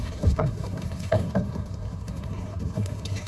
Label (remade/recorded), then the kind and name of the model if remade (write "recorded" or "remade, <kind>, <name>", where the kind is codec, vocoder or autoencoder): remade, codec, SNAC